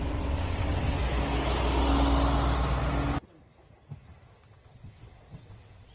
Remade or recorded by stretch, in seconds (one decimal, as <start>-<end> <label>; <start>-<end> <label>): 0.0-1.0 remade; 1.0-4.5 recorded; 4.5-5.9 remade